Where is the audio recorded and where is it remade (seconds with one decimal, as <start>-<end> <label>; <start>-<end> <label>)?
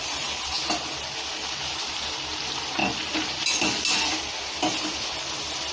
0.0-5.7 recorded